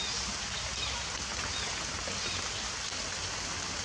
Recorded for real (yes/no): yes